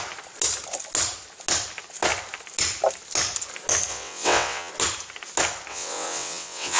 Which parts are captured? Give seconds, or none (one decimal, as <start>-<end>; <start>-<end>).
0.0-3.9; 4.7-5.7